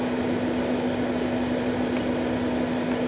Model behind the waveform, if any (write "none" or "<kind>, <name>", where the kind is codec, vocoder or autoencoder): none